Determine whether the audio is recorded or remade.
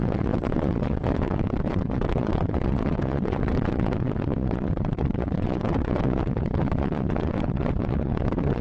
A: remade